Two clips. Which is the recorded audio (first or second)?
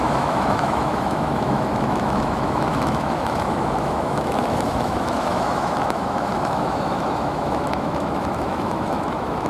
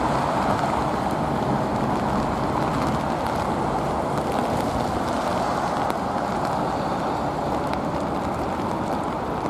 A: second